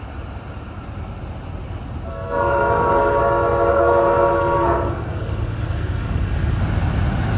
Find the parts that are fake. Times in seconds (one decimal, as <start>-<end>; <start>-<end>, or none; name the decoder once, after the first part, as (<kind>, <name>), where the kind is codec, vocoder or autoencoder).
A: 2.1-3.2 (codec, SNAC); 3.7-6.6